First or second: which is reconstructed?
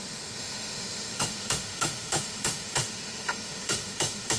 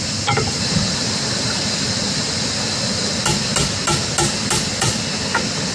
first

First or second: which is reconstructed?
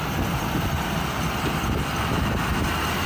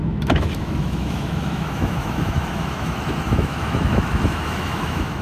second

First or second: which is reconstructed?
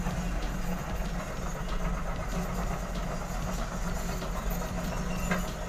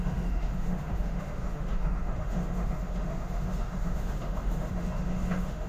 second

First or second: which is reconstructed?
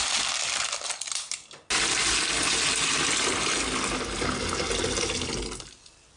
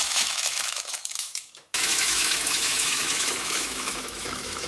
second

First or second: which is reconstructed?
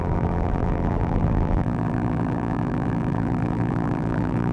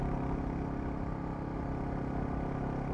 first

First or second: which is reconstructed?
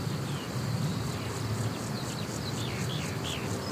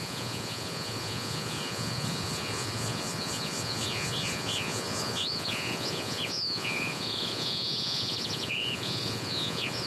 second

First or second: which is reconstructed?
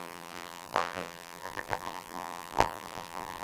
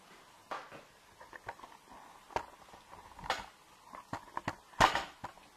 first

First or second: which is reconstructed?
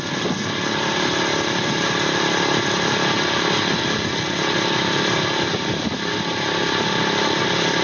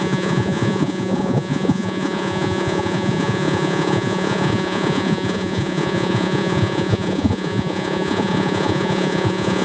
second